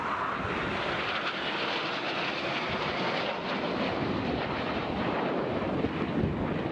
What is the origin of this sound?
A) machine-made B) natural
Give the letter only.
B